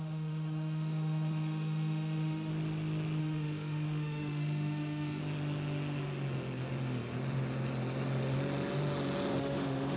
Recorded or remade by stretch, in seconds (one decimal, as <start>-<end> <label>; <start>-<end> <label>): 0.0-2.5 remade; 2.5-3.2 recorded; 3.2-5.2 remade; 5.2-9.4 recorded; 9.4-10.0 remade